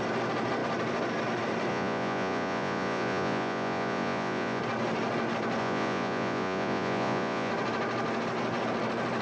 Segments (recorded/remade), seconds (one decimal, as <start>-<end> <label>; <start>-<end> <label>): 0.0-1.7 recorded; 1.7-4.6 remade; 4.6-5.6 recorded; 5.6-7.5 remade; 7.5-9.2 recorded